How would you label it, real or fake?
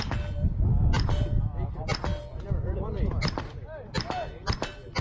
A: real